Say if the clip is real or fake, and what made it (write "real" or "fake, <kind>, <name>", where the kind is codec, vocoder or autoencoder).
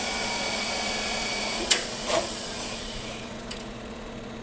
fake, vocoder, Vocos